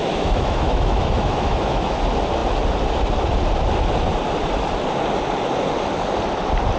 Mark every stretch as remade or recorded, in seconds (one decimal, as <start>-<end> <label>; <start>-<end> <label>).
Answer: 0.0-2.0 remade; 2.0-6.8 recorded